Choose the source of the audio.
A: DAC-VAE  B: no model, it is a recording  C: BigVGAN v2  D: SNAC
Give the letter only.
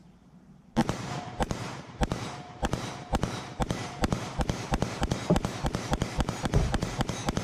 C